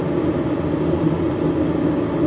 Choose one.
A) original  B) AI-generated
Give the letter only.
A